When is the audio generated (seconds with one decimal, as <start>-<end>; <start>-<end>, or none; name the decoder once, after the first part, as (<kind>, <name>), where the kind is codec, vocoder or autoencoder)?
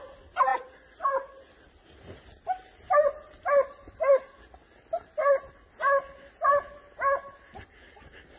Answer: none